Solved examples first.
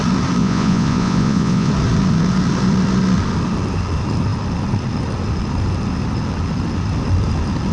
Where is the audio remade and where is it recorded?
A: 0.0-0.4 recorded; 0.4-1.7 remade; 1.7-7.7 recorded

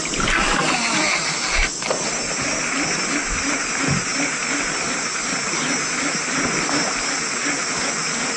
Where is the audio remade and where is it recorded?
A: 0.0-8.4 recorded